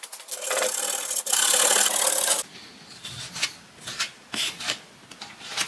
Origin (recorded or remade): recorded